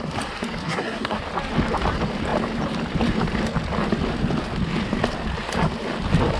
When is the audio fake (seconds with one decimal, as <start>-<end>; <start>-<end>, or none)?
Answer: 0.6-1.2